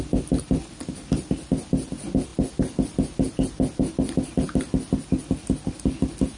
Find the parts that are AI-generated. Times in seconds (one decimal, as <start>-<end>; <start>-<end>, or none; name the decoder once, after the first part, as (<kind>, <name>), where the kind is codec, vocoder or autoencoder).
none